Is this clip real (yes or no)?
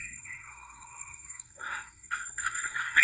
no